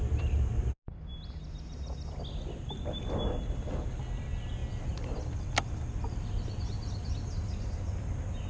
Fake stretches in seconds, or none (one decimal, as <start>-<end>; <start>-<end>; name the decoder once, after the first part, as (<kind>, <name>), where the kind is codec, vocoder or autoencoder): none